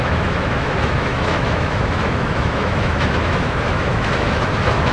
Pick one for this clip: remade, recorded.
remade